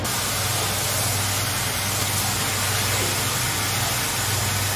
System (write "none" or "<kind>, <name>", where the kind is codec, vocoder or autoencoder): none